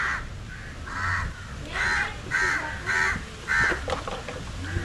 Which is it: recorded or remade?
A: recorded